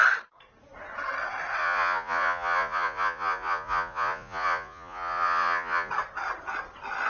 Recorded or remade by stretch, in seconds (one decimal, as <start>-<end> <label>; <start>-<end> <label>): 0.0-1.6 recorded; 1.6-5.9 remade; 5.9-7.1 recorded